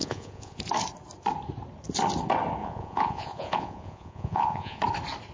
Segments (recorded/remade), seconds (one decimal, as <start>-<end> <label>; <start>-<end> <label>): 0.0-0.6 remade; 0.6-2.6 recorded; 2.6-4.8 remade; 4.8-5.3 recorded